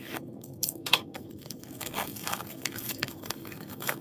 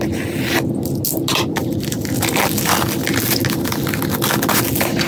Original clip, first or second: second